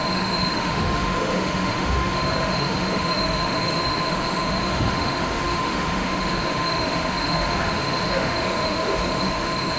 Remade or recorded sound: remade